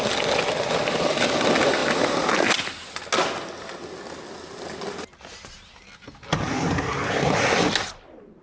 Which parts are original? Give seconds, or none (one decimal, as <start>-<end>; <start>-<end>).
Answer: 0.0-8.4

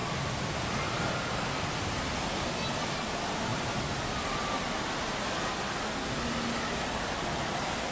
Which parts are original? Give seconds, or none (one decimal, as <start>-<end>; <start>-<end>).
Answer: 0.0-7.9

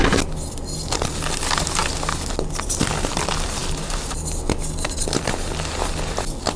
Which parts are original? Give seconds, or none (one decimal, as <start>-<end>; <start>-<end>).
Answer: 0.0-6.6

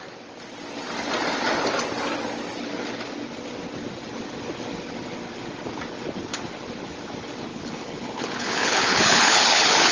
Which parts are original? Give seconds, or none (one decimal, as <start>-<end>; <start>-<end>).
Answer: 0.0-7.5

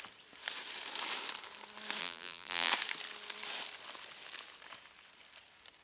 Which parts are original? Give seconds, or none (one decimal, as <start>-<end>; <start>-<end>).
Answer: 0.0-2.0; 2.7-5.8